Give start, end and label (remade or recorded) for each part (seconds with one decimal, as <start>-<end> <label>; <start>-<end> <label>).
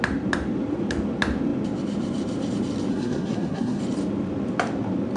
0.0-2.9 recorded; 2.9-3.8 remade; 3.8-5.2 recorded